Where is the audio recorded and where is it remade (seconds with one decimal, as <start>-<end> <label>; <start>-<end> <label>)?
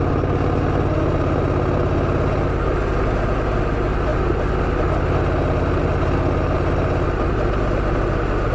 0.0-8.5 recorded